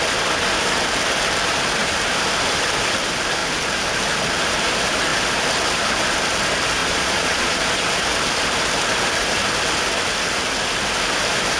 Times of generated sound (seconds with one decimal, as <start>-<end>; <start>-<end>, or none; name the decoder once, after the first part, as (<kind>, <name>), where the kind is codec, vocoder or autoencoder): 6.8-7.6 (vocoder, Vocos)